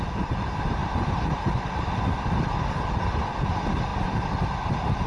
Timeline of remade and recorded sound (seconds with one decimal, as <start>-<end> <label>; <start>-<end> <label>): 0.0-5.1 recorded